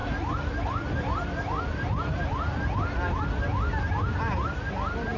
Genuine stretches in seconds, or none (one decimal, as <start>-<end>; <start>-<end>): 0.0-5.2